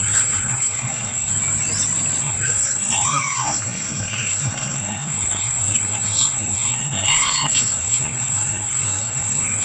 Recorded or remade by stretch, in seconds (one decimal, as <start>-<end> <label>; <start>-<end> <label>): 0.0-1.3 remade; 1.3-2.2 recorded; 2.2-9.6 remade